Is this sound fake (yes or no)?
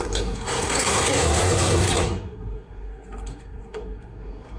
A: yes